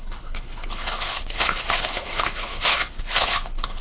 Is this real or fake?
fake